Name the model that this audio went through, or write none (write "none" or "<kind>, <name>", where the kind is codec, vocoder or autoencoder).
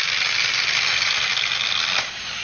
none